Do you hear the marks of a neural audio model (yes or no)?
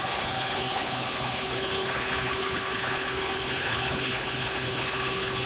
yes